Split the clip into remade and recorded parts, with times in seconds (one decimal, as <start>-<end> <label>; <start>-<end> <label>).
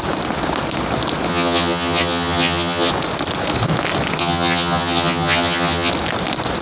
0.0-1.3 recorded; 1.3-2.9 remade; 2.9-4.2 recorded; 4.2-5.9 remade; 5.9-6.6 recorded